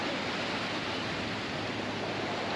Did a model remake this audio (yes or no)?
no